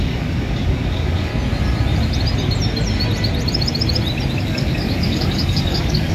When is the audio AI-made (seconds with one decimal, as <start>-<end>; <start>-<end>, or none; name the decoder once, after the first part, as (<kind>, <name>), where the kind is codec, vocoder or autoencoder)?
0.0-1.3 (codec, DAC); 4.4-6.1